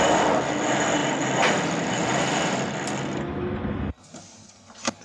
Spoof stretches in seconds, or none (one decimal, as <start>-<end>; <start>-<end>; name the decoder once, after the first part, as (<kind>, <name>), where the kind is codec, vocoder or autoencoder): none